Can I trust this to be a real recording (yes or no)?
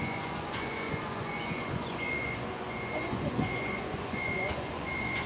no